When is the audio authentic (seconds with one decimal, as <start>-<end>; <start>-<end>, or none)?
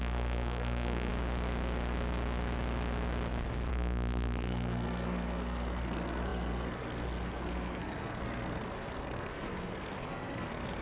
1.1-3.7